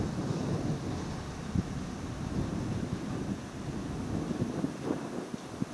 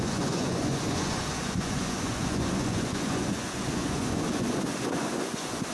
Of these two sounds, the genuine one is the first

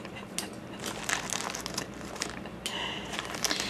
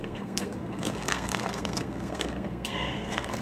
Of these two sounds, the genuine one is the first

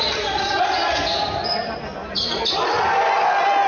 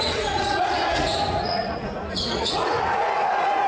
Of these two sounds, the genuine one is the first